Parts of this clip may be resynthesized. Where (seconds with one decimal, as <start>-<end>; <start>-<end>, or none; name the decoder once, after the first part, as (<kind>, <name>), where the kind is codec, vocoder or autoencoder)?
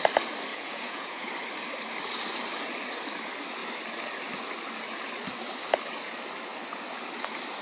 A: 0.5-1.3 (vocoder, Vocos)